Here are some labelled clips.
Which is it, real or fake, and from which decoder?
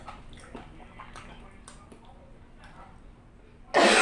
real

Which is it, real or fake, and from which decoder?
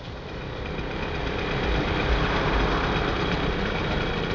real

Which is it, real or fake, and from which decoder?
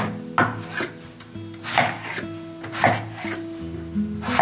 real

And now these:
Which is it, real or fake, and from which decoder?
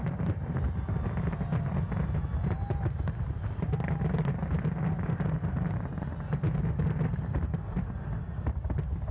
real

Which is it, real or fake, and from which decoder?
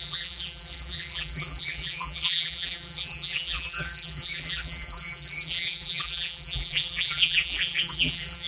fake, vocoder, BigVGAN v2